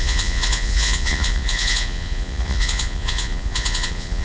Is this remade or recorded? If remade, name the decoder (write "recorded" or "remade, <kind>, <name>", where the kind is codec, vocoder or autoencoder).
remade, vocoder, Vocos